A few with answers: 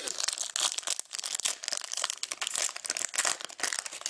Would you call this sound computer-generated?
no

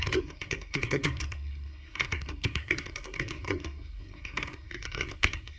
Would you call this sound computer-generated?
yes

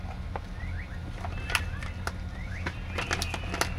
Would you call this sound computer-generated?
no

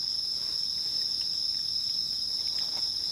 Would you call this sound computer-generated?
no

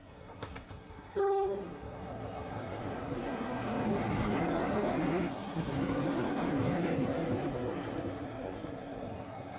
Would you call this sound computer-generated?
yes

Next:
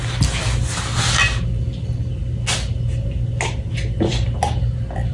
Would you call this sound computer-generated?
no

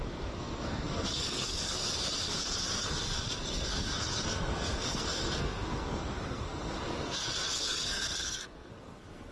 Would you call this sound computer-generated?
yes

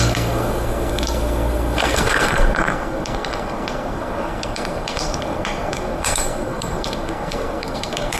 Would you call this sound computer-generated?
yes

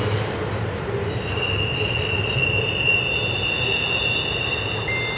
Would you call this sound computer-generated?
no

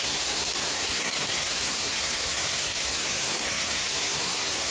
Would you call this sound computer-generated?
yes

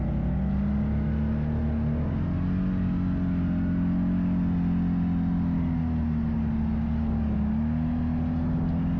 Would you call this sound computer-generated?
no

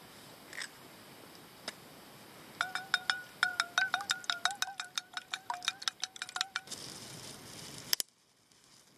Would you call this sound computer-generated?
no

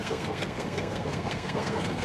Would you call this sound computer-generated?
yes